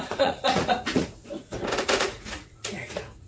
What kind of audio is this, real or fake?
fake